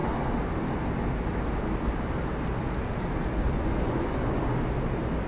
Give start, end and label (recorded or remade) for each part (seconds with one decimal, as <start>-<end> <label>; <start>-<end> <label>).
0.0-3.4 recorded; 3.4-4.4 remade; 4.4-5.3 recorded